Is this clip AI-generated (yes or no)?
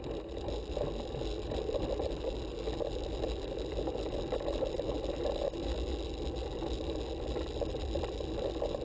no